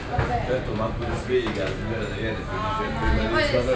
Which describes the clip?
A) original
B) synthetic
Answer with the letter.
A